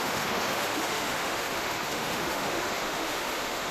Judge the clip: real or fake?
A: fake